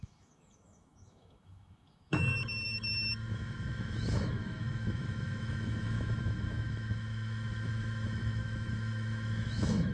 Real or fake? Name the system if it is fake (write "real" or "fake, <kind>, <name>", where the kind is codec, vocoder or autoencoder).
fake, autoencoder, DAC-VAE